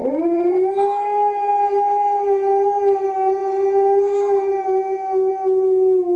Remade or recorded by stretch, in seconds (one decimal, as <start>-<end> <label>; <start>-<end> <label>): 0.0-6.2 recorded